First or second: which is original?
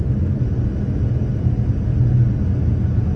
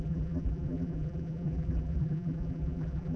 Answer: first